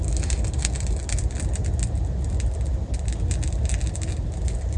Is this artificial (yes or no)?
no